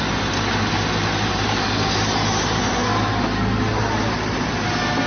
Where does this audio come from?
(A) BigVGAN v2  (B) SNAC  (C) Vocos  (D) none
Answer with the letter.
D